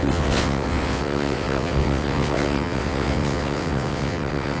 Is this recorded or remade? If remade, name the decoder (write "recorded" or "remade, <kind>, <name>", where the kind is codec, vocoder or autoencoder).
remade, vocoder, WaveNeXt